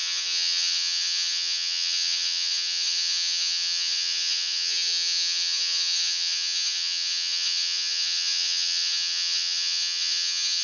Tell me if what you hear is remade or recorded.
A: remade